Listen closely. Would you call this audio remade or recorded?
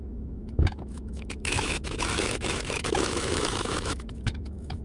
remade